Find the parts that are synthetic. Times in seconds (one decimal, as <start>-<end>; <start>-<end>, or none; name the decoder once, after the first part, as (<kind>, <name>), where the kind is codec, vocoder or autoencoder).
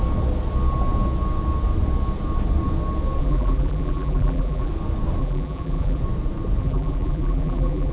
3.2-4.7 (vocoder, BigVGAN v2); 5.2-6.0; 6.6-7.9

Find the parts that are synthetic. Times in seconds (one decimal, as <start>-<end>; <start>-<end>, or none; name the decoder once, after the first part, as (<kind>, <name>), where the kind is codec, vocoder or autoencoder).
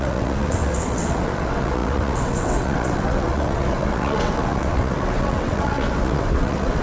0.0-6.8 (vocoder, WaveNeXt)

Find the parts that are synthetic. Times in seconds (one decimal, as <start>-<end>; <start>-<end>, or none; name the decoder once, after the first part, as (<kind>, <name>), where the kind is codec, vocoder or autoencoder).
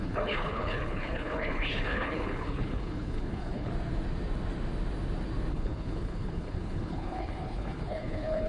0.0-3.7 (codec, HILCodec); 5.5-8.5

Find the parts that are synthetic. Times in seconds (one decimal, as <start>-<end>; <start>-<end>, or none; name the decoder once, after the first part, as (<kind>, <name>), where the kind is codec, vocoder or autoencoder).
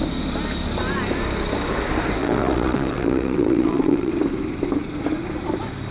2.2-4.1 (vocoder, WaveNeXt)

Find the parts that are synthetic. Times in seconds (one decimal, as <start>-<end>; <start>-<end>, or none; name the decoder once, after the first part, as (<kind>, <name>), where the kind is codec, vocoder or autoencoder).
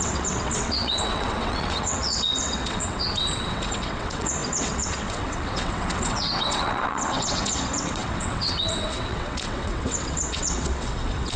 0.0-11.4 (vocoder, WaveNeXt)